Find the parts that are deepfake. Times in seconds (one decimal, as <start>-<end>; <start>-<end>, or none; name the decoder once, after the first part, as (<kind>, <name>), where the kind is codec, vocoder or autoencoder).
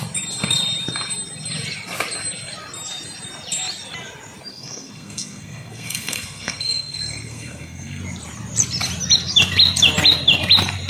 4.5-8.0 (codec, SNAC)